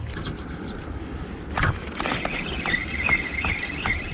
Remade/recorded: recorded